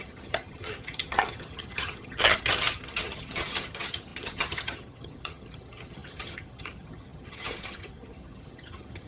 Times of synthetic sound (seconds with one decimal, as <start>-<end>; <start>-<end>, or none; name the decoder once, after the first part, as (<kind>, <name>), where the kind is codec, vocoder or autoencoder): 0.0-9.1 (vocoder, HiFi-GAN)